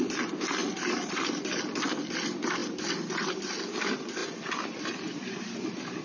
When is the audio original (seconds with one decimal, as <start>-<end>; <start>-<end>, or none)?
0.0-0.6; 1.6-6.0